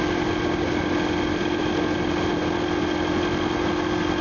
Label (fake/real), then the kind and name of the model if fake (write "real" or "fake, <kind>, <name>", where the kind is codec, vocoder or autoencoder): real